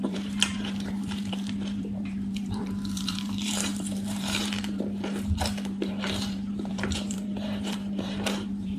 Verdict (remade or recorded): remade